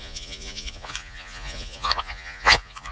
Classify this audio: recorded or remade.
remade